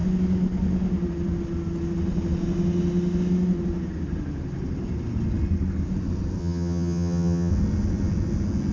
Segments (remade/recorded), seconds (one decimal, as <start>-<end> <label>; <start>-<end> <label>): 0.0-6.4 recorded; 6.4-7.5 remade; 7.5-8.7 recorded